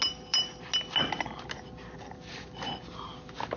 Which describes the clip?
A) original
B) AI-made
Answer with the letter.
A